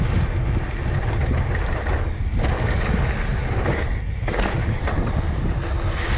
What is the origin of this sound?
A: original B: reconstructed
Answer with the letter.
A